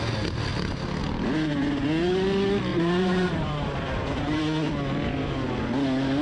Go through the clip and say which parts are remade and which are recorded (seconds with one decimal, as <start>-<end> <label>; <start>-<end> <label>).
0.0-2.7 recorded; 2.7-4.4 remade; 4.4-6.2 recorded